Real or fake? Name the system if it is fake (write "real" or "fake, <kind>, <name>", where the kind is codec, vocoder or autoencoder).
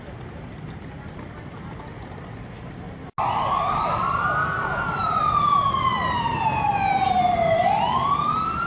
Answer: real